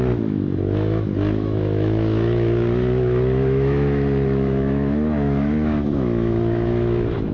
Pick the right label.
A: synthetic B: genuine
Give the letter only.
A